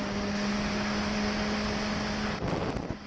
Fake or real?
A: real